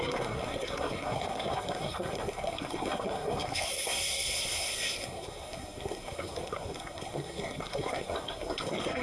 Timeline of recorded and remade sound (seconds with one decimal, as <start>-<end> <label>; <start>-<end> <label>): 0.0-9.0 remade